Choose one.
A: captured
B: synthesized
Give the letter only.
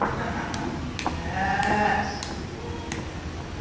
A